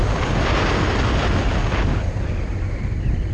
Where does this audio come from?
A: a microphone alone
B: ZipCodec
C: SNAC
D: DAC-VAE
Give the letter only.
A